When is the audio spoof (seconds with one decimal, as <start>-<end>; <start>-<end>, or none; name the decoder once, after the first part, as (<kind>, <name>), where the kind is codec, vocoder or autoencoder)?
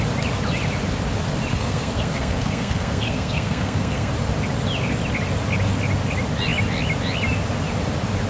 1.5-4.1 (codec, SNAC)